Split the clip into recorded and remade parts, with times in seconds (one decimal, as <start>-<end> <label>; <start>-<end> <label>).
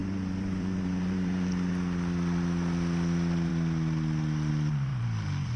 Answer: 0.0-1.7 remade; 1.7-4.9 recorded; 4.9-5.6 remade